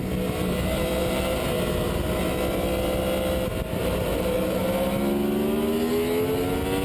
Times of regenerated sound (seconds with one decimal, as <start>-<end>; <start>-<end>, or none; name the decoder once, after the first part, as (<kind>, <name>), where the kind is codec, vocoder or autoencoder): 1.0-1.5 (vocoder, BigVGAN v2); 3.8-4.6